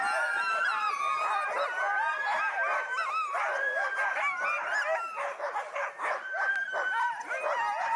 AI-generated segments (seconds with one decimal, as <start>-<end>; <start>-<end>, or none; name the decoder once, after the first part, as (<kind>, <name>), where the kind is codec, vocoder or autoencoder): none